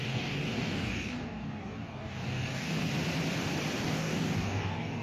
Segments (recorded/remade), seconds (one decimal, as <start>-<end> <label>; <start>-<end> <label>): 0.0-2.9 remade; 2.9-3.8 recorded; 3.8-5.0 remade